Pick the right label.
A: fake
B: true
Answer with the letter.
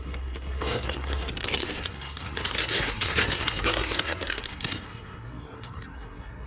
A